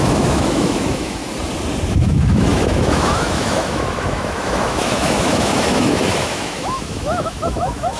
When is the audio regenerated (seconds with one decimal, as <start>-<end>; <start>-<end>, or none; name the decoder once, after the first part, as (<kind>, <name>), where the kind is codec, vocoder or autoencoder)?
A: 0.0-1.2 (autoencoder, DAC-VAE); 1.9-8.0